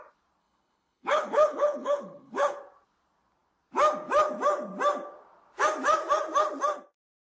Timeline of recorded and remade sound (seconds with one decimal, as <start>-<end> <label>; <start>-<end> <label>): 0.0-0.4 recorded; 0.4-2.6 remade; 2.6-7.2 recorded